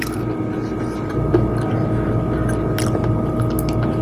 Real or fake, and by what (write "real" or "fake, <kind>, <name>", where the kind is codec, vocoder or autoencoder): real